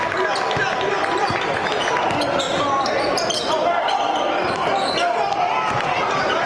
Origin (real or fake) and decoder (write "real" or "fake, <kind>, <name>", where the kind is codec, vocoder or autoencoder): fake, vocoder, BigVGAN v2